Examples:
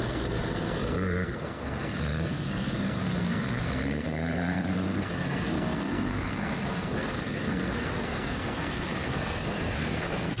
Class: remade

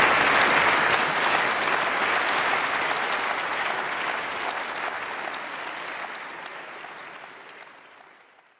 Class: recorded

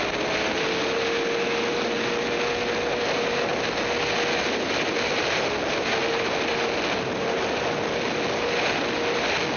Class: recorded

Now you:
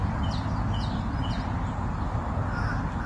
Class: recorded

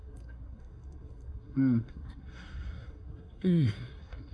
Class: remade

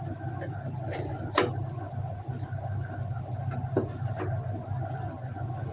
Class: recorded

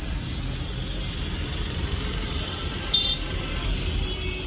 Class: recorded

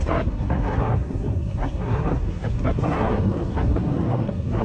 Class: remade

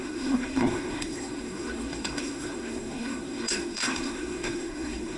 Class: remade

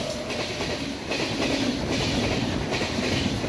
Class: recorded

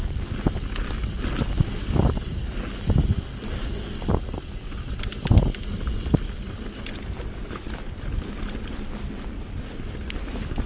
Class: recorded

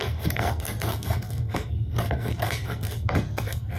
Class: remade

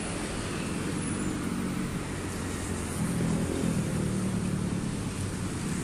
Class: recorded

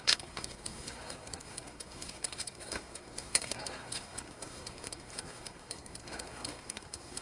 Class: remade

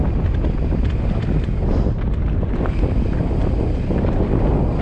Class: recorded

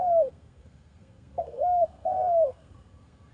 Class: remade